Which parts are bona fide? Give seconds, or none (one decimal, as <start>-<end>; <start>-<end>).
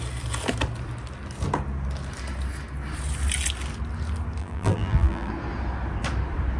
0.0-4.4; 5.3-6.6